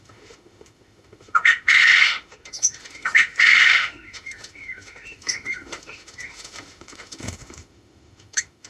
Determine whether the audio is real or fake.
fake